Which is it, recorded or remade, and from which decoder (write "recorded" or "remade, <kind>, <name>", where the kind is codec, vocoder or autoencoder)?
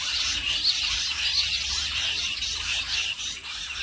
recorded